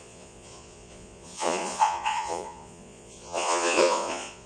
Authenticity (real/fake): fake